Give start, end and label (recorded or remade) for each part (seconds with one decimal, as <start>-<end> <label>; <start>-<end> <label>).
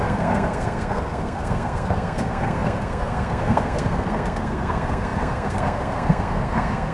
0.0-6.9 remade